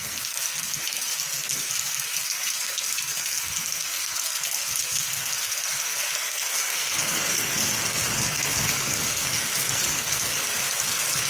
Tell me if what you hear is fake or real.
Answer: fake